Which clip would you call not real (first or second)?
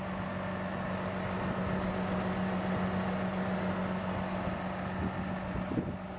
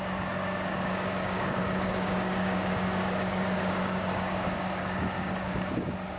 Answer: second